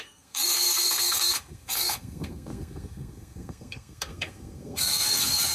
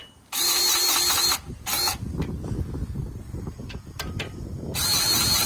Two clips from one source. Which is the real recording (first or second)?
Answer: second